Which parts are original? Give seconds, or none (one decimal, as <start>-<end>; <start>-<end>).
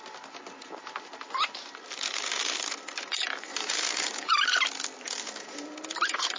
0.0-3.5; 4.3-6.4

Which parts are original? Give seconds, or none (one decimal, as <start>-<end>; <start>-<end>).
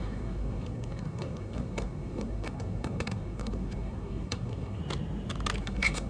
4.8-5.6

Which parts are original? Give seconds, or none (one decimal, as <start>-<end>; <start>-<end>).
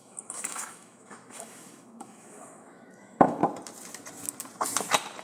3.4-5.2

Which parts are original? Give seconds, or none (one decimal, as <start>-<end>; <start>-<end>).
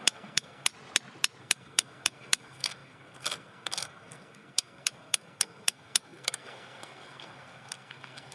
0.7-1.4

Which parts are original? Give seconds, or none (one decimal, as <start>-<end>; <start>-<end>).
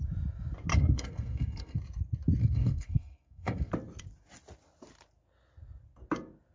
0.0-0.7; 1.8-2.4; 3.7-6.5